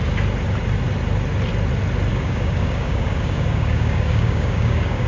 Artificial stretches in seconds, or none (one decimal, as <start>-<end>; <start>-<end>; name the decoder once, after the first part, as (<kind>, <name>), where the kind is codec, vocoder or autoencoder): 2.1-5.1 (codec, DAC)

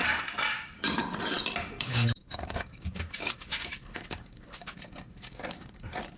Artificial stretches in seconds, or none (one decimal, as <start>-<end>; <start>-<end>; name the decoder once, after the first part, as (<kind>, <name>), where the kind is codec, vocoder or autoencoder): 0.5-1.0 (codec, DAC); 1.8-6.2

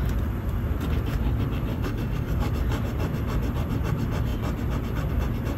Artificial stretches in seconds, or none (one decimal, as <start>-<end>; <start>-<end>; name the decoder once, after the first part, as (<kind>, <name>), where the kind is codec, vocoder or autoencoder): 1.7-2.5 (codec, DAC)

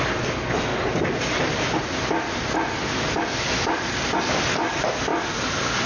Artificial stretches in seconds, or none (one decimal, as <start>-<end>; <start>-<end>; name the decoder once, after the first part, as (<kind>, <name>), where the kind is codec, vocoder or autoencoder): none